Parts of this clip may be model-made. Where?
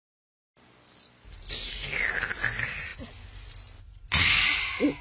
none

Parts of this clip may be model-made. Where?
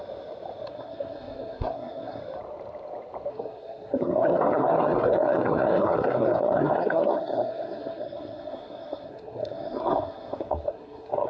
0.7-2.2; 3.3-11.3